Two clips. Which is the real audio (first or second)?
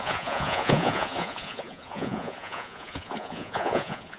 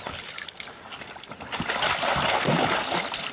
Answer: second